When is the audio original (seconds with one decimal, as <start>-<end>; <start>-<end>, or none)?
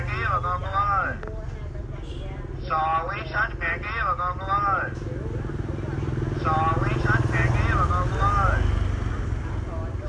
0.0-10.1